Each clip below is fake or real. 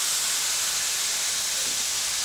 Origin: real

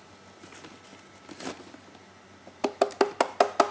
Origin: real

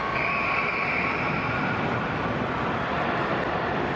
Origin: real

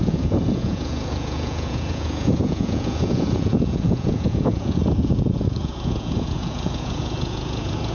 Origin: fake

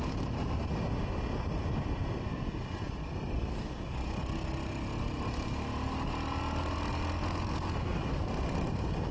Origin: real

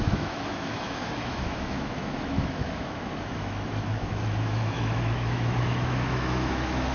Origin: fake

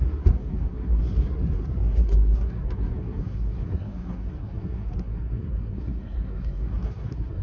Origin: fake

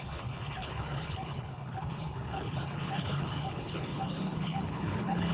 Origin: fake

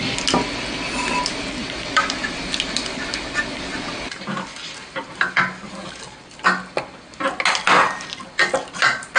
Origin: real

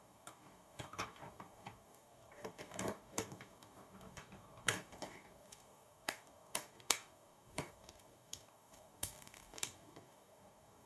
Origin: fake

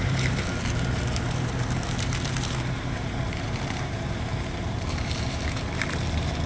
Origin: fake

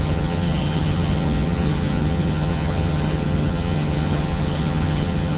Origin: fake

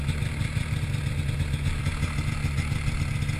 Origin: real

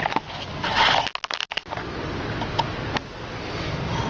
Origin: real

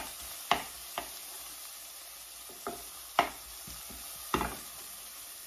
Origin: real